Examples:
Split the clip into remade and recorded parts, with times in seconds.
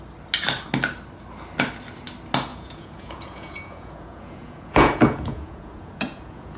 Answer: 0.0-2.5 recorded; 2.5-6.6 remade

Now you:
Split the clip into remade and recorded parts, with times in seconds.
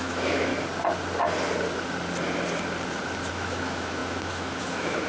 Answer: 0.0-0.5 remade; 0.5-3.3 recorded; 3.3-5.1 remade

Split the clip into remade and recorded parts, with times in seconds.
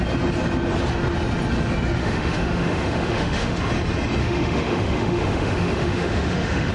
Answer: 0.0-2.0 recorded; 2.0-3.6 remade; 3.6-4.2 recorded; 4.2-6.7 remade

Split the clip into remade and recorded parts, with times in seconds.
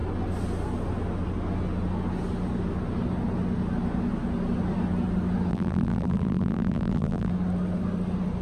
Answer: 0.0-5.5 recorded; 5.5-7.3 remade; 7.3-8.4 recorded